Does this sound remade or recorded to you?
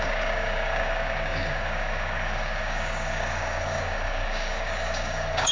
remade